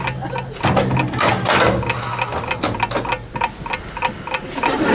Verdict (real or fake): real